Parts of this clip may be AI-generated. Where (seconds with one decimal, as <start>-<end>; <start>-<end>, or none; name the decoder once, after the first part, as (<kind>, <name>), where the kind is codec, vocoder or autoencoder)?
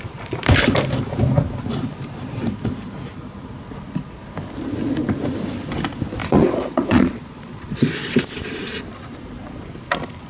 6.2-7.9 (vocoder, Vocos)